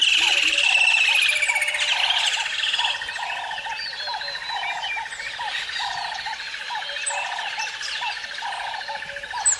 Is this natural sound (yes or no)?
yes